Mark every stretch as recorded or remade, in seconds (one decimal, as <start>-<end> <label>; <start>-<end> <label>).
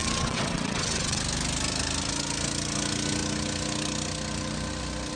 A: 0.0-1.2 remade; 1.2-5.2 recorded